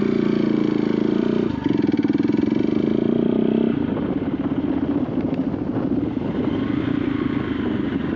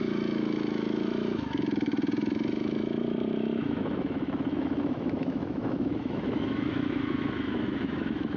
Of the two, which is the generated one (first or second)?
second